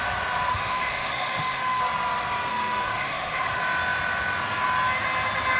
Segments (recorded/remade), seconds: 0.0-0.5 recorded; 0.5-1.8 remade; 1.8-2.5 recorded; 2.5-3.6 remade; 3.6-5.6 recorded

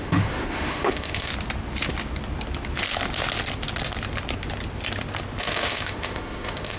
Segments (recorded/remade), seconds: 0.0-1.3 remade; 1.3-5.4 recorded; 5.4-6.8 remade